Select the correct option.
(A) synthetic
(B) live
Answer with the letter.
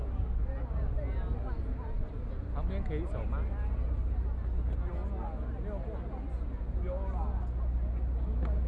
B